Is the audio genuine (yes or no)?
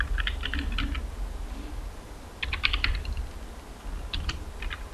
yes